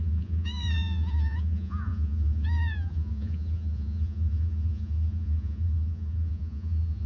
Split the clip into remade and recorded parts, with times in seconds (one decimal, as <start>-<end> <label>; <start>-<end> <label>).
0.0-7.1 remade